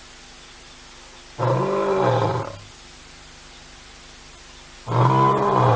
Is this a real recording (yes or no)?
yes